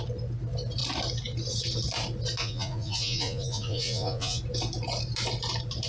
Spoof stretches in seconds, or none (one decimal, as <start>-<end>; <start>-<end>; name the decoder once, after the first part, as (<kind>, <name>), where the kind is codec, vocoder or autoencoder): 2.4-4.4 (vocoder, Vocos)